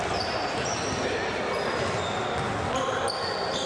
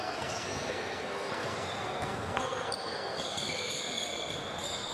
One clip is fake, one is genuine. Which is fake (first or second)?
second